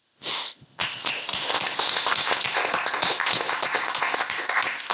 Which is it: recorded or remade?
remade